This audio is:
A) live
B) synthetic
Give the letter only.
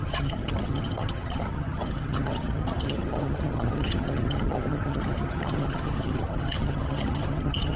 B